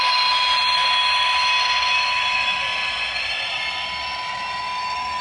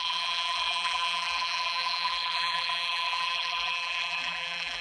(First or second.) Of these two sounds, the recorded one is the first